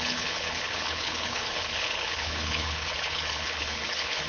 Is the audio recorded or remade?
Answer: remade